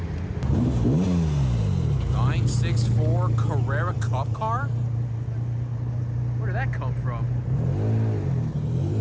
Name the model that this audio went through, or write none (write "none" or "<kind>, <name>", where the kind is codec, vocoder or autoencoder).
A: none